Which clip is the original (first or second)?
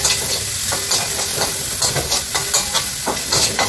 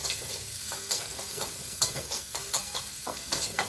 first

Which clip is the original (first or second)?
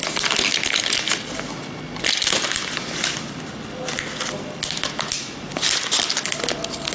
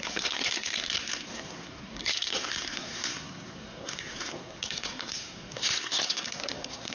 first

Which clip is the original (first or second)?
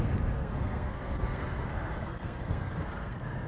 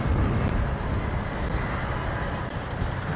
second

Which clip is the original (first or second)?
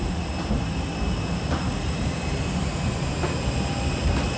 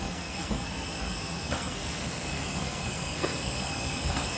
first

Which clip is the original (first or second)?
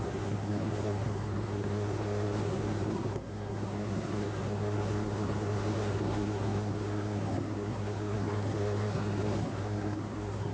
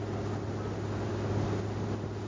second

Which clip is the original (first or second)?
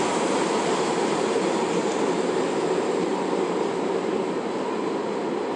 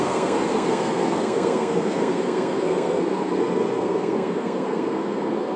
first